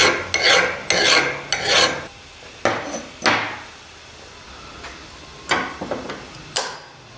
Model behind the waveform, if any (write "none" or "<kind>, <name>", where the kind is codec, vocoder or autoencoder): none